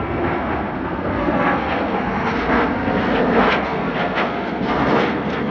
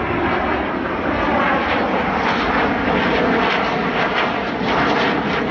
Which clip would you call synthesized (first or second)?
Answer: first